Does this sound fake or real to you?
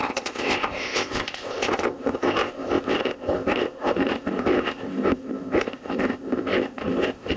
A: fake